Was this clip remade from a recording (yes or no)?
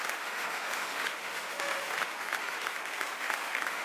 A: yes